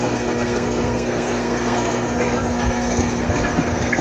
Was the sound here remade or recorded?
remade